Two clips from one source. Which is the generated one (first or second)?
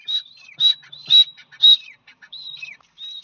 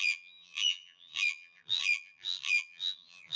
second